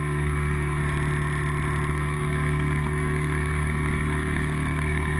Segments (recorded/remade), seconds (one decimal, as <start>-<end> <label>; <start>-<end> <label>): 0.0-0.8 remade; 0.8-1.9 recorded; 1.9-5.2 remade